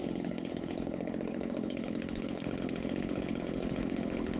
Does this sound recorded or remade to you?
remade